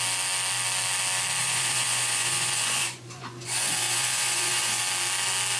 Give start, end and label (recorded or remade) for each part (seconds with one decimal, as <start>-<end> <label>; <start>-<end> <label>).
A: 0.0-1.4 recorded; 1.4-4.8 remade; 4.8-5.6 recorded